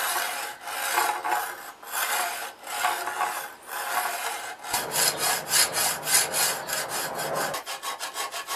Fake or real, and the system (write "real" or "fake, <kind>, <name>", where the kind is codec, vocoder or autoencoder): real